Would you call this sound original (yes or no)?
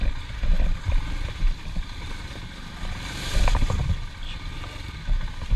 yes